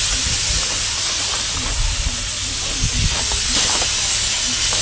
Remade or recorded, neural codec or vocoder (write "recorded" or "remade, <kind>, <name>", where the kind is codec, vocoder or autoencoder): recorded